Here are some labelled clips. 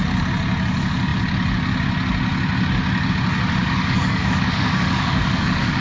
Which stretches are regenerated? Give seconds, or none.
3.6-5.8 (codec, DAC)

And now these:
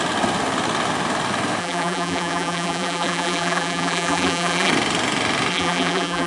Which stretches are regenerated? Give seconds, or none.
1.6-4.7 (vocoder, BigVGAN v2); 5.5-6.3

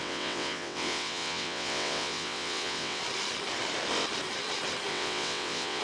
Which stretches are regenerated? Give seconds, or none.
0.0-3.0 (vocoder, WaveNeXt); 4.9-5.8

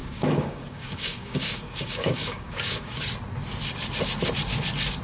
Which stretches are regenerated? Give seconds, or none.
0.0-3.0 (codec, DAC)

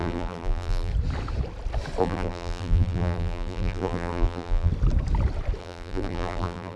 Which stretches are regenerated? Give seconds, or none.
0.0-0.9 (vocoder, BigVGAN v2); 2.0-4.7; 5.6-6.8